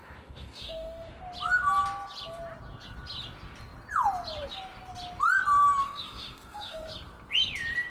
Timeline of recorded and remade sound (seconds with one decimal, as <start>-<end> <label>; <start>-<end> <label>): 0.0-1.2 remade; 1.2-5.8 recorded; 5.8-6.9 remade; 6.9-7.9 recorded